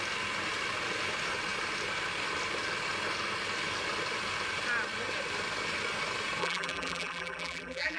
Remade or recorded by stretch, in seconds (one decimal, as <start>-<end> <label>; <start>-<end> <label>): 0.0-6.4 recorded; 6.4-8.0 remade